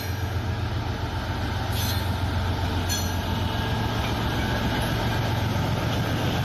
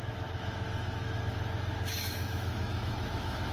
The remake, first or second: second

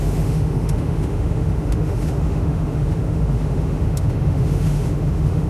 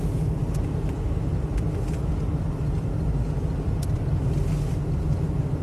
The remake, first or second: first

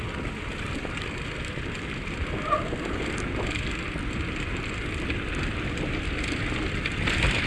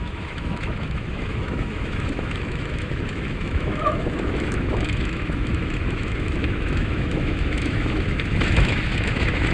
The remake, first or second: second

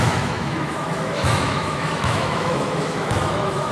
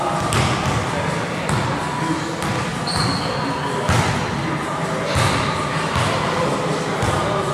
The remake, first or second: first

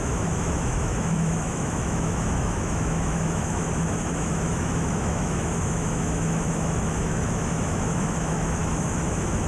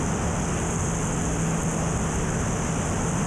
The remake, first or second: first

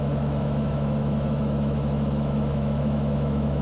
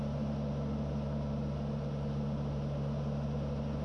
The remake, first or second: first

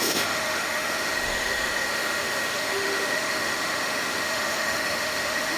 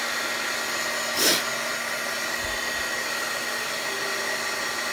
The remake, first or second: first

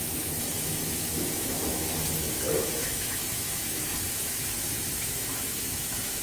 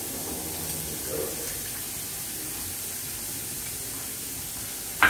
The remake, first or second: first